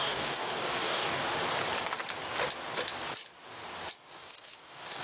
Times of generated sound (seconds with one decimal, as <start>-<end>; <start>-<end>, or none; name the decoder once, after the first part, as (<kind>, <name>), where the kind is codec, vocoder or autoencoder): 0.0-1.2 (codec, DAC); 4.2-5.0